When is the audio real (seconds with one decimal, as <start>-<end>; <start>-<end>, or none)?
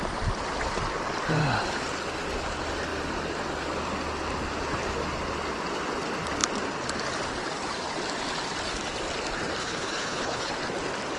0.0-9.6; 10.5-11.2